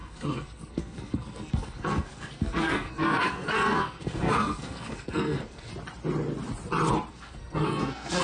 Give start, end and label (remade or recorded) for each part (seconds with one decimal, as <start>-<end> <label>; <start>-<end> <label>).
0.0-5.7 remade; 5.7-7.1 recorded; 7.1-8.2 remade